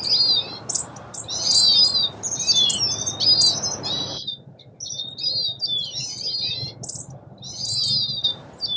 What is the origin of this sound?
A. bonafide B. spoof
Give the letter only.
A